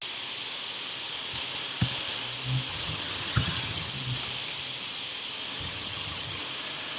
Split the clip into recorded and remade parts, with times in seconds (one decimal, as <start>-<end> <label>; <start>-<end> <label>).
0.0-2.7 recorded; 2.7-3.9 remade; 3.9-5.6 recorded; 5.6-6.4 remade; 6.4-7.0 recorded